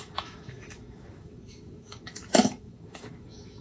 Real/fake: fake